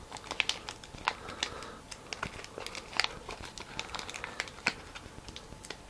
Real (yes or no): yes